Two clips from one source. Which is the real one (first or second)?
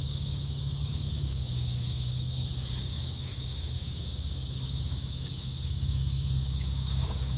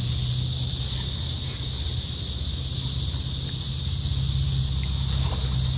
second